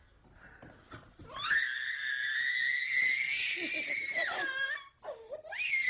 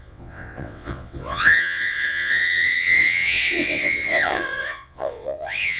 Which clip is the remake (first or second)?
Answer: second